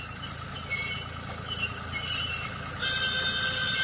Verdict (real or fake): real